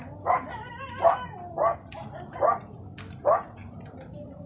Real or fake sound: real